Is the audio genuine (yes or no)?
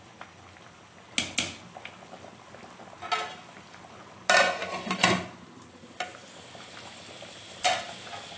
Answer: yes